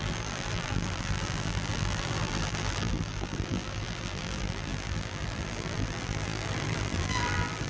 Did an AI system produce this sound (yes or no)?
yes